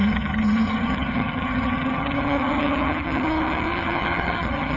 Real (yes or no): no